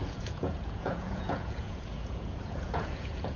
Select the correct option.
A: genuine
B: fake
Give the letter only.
B